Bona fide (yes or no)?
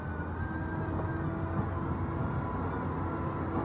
yes